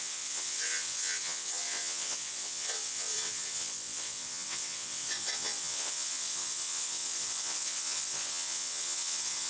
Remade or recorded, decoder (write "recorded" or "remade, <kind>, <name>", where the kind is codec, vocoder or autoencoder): remade, vocoder, WaveNeXt